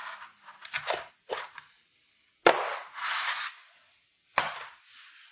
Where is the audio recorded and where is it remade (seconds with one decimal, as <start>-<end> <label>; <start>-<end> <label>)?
0.0-5.3 recorded